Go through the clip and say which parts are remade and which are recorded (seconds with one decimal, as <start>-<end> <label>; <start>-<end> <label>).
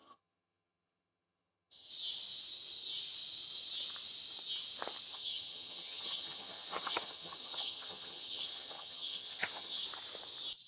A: 0.0-1.9 remade; 1.9-5.1 recorded; 5.1-9.8 remade; 9.8-10.7 recorded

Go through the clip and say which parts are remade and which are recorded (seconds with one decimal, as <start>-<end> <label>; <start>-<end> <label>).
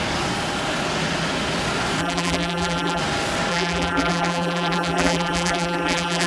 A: 0.0-2.0 recorded; 2.0-3.0 remade; 3.0-3.5 recorded; 3.5-6.3 remade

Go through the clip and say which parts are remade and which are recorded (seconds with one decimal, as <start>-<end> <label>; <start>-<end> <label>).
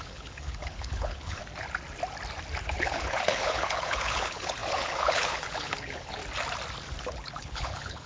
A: 0.0-1.4 remade; 1.4-2.6 recorded; 2.6-6.2 remade; 6.2-7.0 recorded; 7.0-8.1 remade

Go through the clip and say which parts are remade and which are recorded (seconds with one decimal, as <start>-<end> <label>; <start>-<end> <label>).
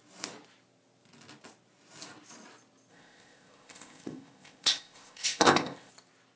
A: 0.0-2.9 recorded; 2.9-5.9 remade; 5.9-6.4 recorded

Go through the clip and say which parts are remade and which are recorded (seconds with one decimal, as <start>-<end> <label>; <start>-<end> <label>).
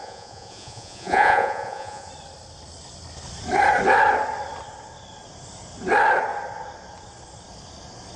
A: 0.0-2.1 remade; 2.1-8.2 recorded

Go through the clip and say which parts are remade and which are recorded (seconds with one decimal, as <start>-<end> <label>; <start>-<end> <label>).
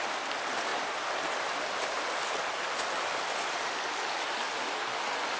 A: 0.0-5.4 recorded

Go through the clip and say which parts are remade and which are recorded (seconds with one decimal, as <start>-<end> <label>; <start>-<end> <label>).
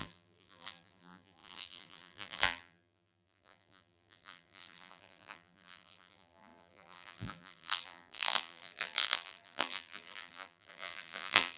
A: 0.0-11.6 remade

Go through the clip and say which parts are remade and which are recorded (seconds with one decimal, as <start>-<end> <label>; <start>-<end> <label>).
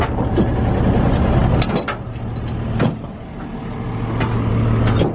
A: 0.0-5.1 recorded